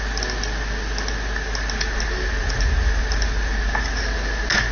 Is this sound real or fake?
real